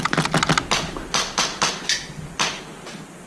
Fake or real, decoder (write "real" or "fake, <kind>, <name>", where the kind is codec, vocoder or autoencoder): real